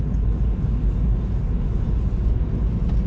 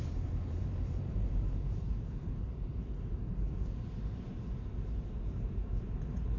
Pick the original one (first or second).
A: first